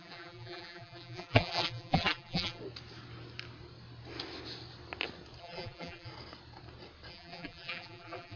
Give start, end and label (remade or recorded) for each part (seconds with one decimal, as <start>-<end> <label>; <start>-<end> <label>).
0.0-2.6 remade; 2.6-5.4 recorded; 5.4-6.1 remade; 6.1-7.1 recorded; 7.1-8.4 remade